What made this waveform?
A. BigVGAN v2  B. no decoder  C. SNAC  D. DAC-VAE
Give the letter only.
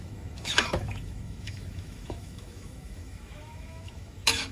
D